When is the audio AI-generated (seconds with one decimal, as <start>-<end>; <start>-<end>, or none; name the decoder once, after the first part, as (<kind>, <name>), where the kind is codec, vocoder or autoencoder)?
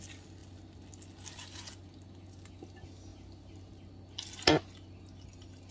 none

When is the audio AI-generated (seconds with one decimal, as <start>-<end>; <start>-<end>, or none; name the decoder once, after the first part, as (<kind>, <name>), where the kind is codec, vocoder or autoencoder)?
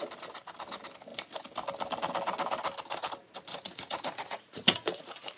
3.5-5.4 (vocoder, Vocos)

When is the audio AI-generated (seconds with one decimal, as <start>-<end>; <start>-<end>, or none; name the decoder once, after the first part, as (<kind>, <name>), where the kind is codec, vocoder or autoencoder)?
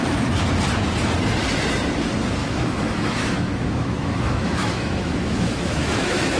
2.4-6.4 (autoencoder, DAC-VAE)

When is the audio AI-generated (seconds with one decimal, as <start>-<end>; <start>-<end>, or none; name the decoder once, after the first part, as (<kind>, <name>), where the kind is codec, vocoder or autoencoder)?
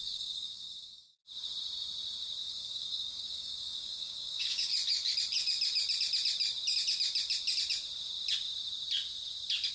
0.0-1.2 (codec, DAC); 2.4-4.7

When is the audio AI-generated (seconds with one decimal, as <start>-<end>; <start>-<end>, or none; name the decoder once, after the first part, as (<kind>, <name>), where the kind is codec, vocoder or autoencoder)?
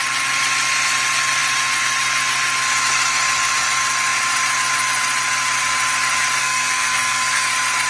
6.4-7.5 (codec, SNAC)